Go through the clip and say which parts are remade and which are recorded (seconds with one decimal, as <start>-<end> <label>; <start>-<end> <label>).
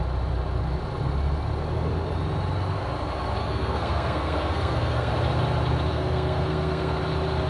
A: 0.0-3.4 recorded; 3.4-5.1 remade; 5.1-5.9 recorded; 5.9-7.0 remade; 7.0-7.5 recorded